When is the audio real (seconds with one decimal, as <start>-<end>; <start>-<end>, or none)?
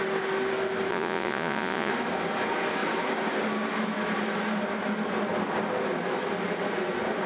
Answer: 0.0-0.9; 1.9-7.3